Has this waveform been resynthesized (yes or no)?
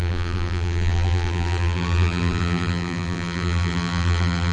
yes